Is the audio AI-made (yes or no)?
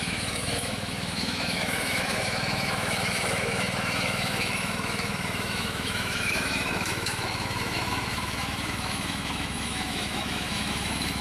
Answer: yes